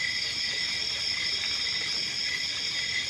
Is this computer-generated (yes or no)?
no